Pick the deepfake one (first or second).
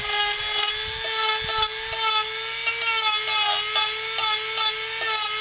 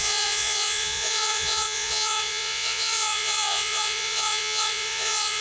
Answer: second